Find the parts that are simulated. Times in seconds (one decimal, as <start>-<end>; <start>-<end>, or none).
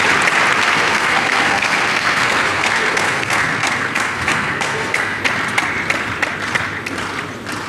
0.6-5.2